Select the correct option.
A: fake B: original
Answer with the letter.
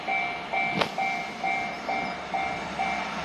B